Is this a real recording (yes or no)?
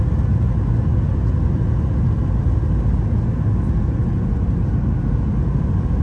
yes